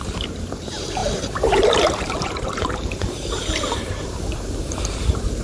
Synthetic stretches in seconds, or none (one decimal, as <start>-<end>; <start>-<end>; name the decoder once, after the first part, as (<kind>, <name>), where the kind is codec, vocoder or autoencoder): 0.0-5.4 (vocoder, BigVGAN v2)